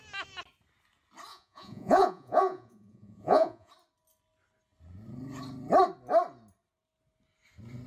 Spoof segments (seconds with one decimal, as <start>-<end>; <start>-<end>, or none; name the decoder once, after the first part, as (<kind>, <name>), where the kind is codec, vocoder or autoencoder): 1.3-3.7 (vocoder, Vocos)